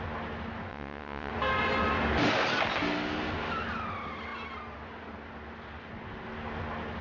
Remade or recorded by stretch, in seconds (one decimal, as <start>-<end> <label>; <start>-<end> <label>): 0.0-0.7 recorded; 0.7-1.3 remade; 1.3-7.0 recorded